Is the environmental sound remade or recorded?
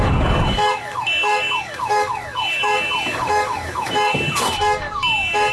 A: remade